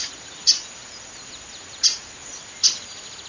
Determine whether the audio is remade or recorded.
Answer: recorded